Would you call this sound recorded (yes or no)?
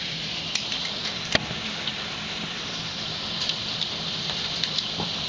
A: no